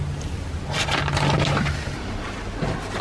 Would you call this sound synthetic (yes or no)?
no